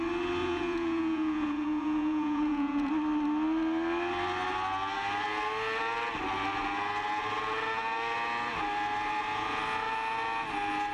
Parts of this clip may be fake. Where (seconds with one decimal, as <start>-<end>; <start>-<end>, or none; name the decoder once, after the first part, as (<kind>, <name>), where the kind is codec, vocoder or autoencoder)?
0.4-2.9 (vocoder, Vocos)